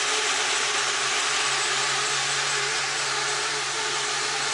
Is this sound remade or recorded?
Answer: recorded